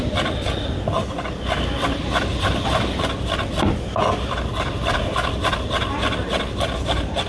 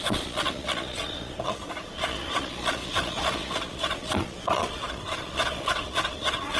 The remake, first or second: second